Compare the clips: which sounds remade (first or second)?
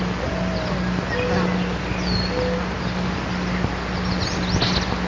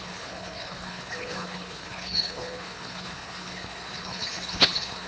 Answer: second